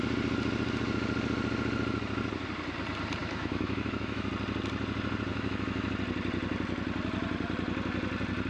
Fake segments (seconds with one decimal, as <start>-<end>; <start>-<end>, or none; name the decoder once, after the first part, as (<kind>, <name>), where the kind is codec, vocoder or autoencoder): 3.2-4.3 (autoencoder, DAC-VAE); 5.3-5.9